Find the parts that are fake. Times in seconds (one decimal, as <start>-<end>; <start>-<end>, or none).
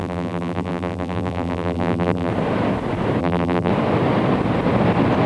0.0-2.3; 3.2-3.7